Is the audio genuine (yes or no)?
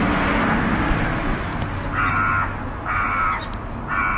yes